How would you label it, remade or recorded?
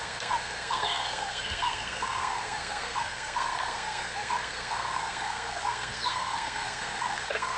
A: remade